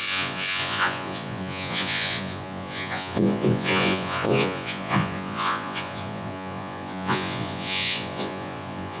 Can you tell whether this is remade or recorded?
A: remade